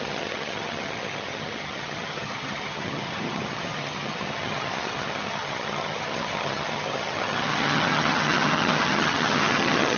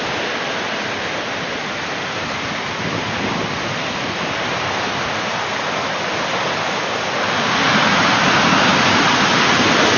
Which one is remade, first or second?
first